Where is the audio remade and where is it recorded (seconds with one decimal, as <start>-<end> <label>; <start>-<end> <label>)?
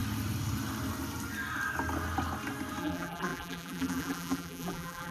0.0-2.8 recorded; 2.8-5.1 remade